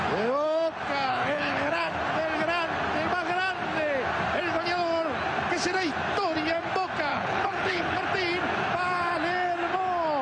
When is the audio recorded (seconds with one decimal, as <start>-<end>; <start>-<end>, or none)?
0.0-1.1; 2.0-7.1; 8.0-10.2